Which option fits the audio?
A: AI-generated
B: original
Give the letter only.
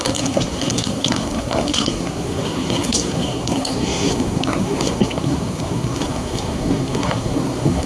A